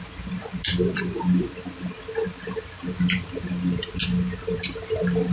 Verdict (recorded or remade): recorded